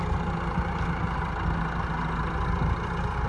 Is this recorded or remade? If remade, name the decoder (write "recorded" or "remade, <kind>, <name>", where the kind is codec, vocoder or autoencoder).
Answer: recorded